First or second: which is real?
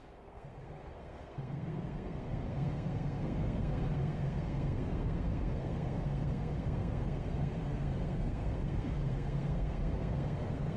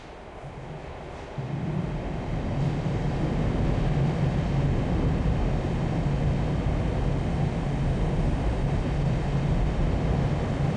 second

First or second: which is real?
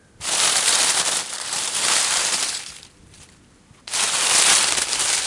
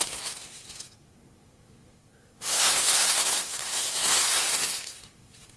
first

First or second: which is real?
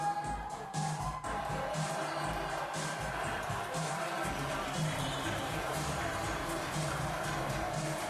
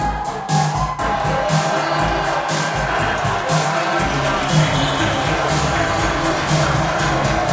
second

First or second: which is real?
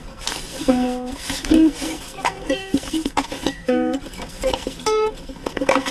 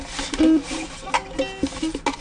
second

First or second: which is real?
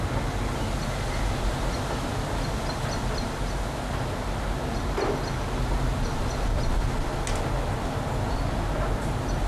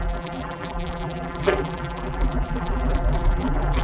first